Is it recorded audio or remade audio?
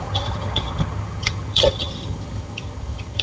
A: remade